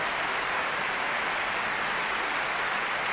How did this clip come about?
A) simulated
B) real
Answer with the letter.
B